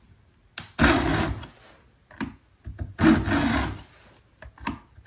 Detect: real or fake real